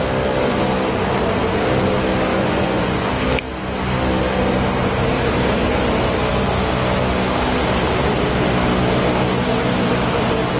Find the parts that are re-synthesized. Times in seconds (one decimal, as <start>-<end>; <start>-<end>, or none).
2.3-3.1

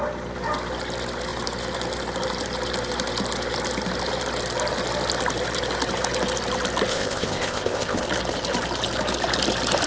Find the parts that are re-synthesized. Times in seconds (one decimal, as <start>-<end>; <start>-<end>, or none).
6.9-8.0

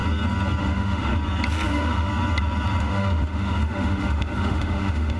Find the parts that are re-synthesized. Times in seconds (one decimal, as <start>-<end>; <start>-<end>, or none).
0.6-1.1; 1.7-2.1; 2.8-5.2

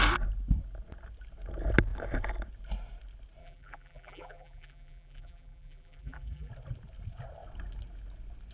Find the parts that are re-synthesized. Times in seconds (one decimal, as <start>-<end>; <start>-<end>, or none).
3.4-6.5

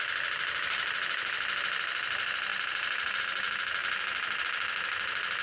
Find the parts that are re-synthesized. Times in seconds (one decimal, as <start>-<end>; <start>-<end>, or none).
0.0-2.5; 3.2-5.4